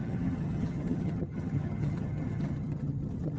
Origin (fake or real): fake